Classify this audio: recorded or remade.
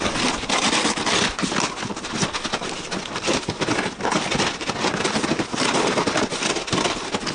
recorded